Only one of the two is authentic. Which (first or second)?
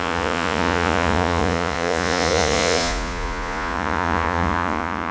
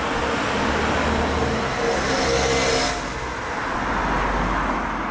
second